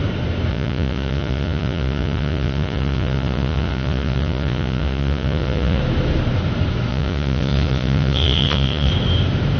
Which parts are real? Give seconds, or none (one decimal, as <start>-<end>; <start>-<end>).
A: 0.0-0.5; 5.8-6.9; 8.9-9.6